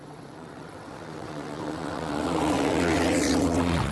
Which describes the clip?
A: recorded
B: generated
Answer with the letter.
B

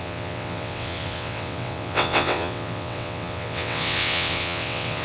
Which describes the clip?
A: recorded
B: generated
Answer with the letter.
B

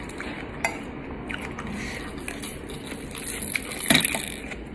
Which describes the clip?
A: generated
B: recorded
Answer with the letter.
B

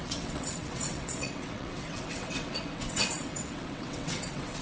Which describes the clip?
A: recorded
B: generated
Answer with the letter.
B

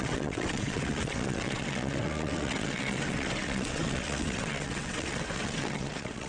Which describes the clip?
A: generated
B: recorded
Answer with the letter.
A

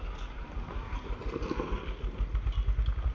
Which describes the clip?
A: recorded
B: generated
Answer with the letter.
A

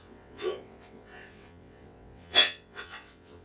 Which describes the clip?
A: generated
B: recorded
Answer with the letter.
A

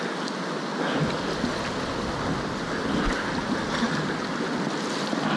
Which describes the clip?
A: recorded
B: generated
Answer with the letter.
A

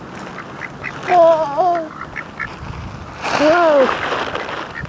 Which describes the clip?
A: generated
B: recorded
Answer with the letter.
B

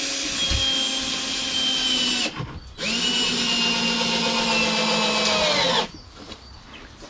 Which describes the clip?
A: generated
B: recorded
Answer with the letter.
B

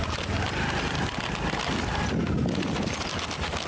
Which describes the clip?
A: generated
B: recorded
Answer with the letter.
B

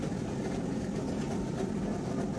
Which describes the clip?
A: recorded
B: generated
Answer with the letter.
A